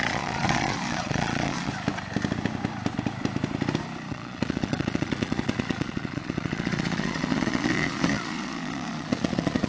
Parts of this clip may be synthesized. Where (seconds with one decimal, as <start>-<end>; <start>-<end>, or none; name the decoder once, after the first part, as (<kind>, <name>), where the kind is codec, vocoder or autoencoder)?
0.0-1.7 (vocoder, Vocos); 4.1-9.7